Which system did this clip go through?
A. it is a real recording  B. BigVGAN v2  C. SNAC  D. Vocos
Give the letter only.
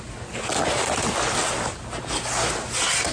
A